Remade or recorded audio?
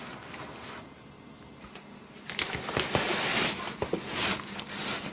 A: recorded